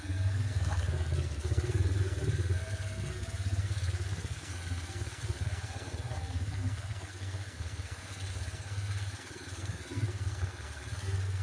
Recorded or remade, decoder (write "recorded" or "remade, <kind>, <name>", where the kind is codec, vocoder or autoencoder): remade, codec, SNAC